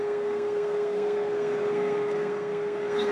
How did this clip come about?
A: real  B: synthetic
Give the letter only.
B